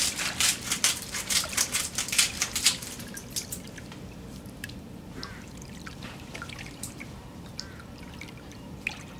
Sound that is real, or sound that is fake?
fake